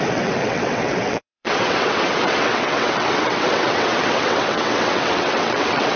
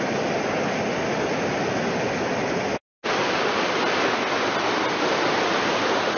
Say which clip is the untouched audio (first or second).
second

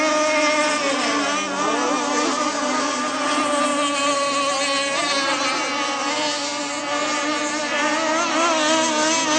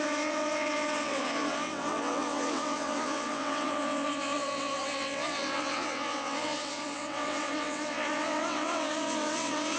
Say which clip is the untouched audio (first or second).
first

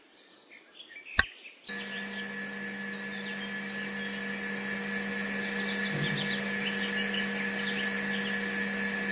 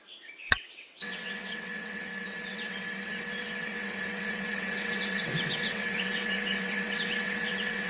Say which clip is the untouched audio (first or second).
first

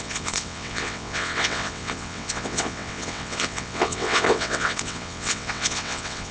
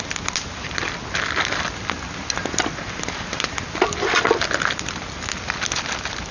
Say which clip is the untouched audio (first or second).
second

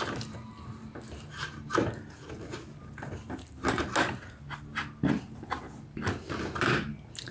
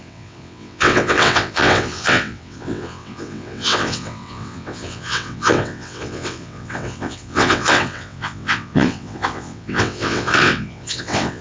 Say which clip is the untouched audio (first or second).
first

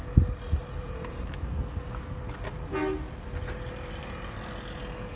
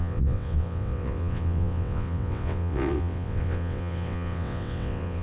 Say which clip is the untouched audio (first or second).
first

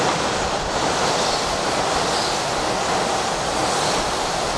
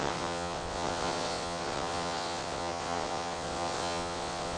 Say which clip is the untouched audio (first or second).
first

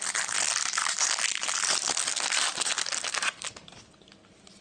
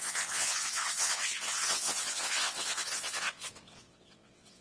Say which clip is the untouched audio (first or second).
first